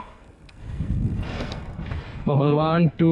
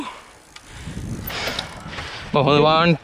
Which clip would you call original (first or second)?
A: second